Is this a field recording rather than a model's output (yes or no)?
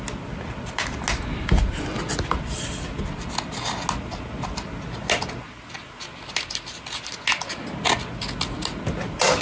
yes